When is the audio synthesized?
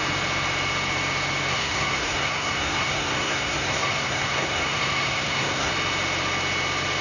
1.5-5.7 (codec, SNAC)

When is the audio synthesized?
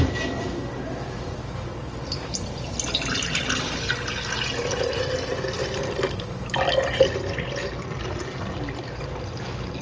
none